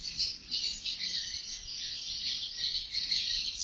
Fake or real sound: real